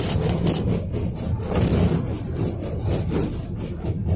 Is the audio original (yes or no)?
yes